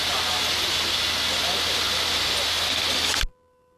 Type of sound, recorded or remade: recorded